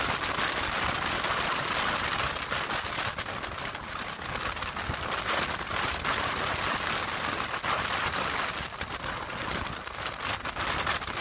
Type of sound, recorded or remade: recorded